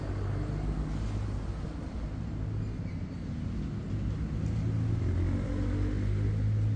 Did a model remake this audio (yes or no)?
no